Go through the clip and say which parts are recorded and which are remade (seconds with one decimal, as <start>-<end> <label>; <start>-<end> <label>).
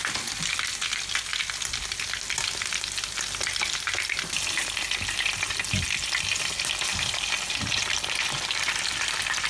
0.0-9.5 recorded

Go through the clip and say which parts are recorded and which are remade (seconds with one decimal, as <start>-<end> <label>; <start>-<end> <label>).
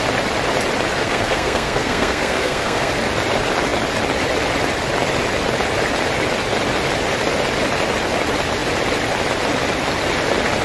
0.0-1.0 recorded; 1.0-2.9 remade; 2.9-10.6 recorded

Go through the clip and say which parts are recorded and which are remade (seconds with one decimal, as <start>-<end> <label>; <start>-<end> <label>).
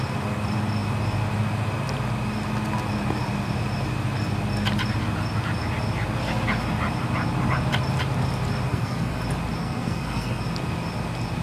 0.0-8.7 recorded; 8.7-9.2 remade; 9.2-9.6 recorded; 9.6-10.4 remade; 10.4-11.4 recorded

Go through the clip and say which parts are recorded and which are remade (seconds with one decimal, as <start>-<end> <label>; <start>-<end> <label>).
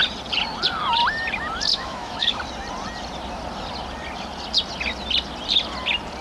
0.0-1.7 recorded; 1.7-2.4 remade; 2.4-6.2 recorded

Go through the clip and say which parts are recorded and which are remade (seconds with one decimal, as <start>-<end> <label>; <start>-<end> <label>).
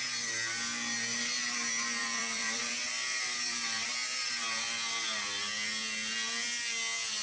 0.0-2.0 recorded; 2.0-3.9 remade; 3.9-7.2 recorded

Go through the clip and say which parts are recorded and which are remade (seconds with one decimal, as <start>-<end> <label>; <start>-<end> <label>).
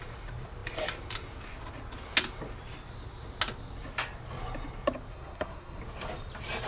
0.0-5.1 recorded; 5.1-5.8 remade; 5.8-6.7 recorded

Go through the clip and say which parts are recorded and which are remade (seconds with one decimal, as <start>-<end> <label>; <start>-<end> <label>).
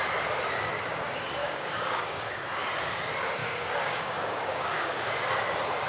0.0-1.4 recorded; 1.4-2.3 remade; 2.3-3.4 recorded; 3.4-5.1 remade; 5.1-5.9 recorded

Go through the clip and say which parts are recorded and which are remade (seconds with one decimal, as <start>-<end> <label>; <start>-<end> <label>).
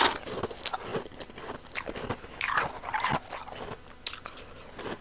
0.0-5.0 recorded